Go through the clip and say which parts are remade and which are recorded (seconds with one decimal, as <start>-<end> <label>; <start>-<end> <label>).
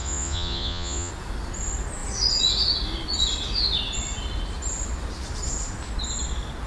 0.0-1.1 remade; 1.1-6.7 recorded